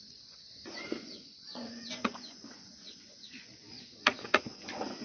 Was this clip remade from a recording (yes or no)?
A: yes